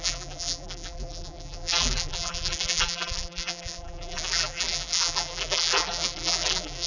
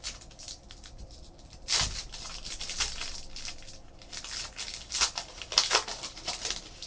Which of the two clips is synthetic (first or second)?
first